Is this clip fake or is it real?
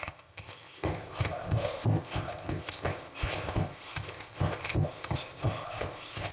fake